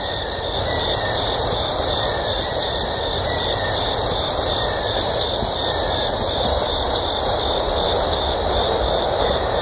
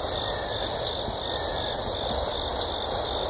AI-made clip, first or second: first